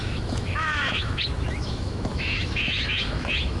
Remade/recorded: remade